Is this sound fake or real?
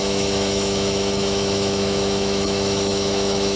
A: fake